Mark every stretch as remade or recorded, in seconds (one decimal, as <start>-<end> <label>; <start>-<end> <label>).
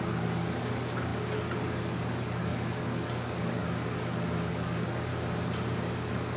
0.0-5.1 remade; 5.1-5.9 recorded; 5.9-6.4 remade